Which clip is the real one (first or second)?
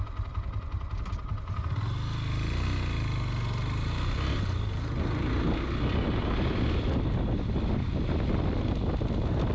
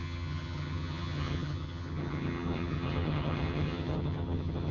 first